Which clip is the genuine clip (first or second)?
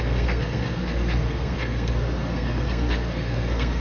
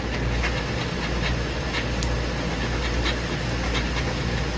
second